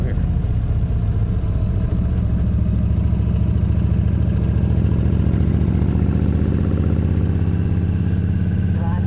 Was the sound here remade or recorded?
recorded